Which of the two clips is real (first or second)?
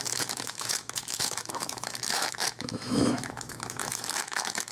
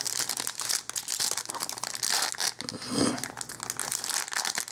second